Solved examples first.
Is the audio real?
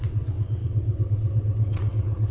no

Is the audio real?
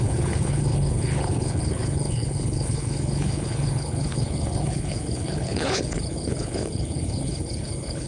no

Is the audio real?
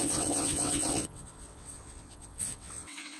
no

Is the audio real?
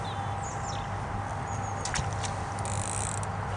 yes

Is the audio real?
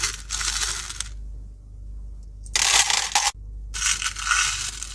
yes